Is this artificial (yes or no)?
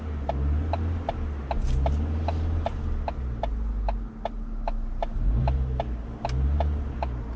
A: no